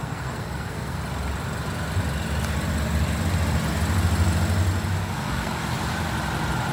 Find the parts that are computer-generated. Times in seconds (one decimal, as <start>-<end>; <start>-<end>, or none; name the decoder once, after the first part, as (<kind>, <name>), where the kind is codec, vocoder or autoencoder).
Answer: 0.0-1.0 (codec, SNAC); 5.0-5.6